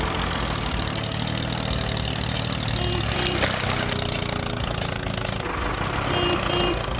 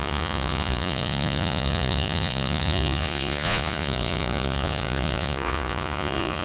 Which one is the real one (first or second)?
first